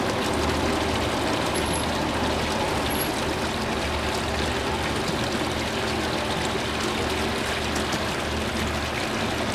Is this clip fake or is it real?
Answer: real